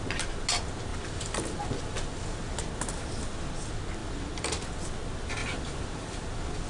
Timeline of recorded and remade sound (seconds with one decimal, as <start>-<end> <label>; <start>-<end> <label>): 0.0-0.9 recorded; 0.9-2.6 remade; 2.6-4.0 recorded; 4.0-4.6 remade; 4.6-5.4 recorded; 5.4-6.7 remade